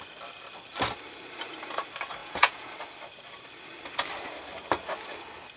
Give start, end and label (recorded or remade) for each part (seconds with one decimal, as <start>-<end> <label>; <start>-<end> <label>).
0.0-2.2 recorded; 2.2-2.7 remade; 2.7-5.6 recorded